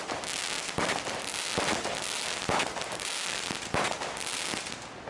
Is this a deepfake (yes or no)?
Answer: no